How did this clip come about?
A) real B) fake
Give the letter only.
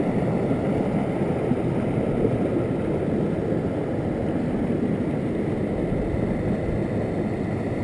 A